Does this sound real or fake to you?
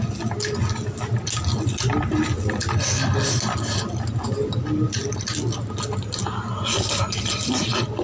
real